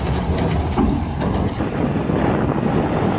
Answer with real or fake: real